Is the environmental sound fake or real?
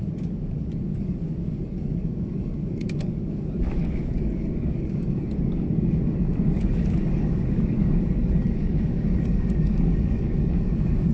fake